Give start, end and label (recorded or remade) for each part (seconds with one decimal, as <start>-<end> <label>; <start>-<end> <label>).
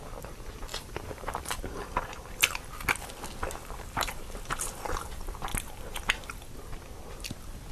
0.0-0.7 recorded; 0.7-1.5 remade; 1.5-3.6 recorded; 3.6-4.5 remade; 4.5-7.7 recorded